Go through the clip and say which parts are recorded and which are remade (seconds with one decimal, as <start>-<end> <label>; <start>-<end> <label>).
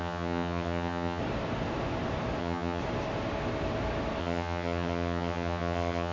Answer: 0.0-1.2 remade; 1.2-2.4 recorded; 2.4-2.8 remade; 2.8-4.2 recorded; 4.2-6.1 remade